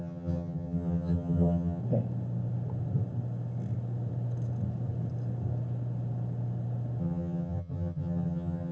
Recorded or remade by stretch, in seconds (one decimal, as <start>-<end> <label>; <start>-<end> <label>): 0.0-1.8 remade; 1.8-7.0 recorded; 7.0-8.7 remade